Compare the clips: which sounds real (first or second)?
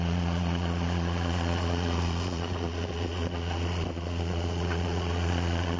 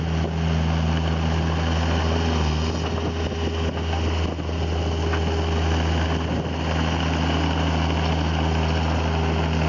second